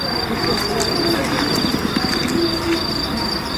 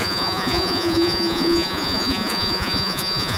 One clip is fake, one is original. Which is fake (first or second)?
second